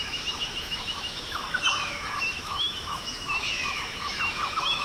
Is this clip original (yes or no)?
no